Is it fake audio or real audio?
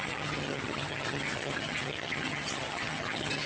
fake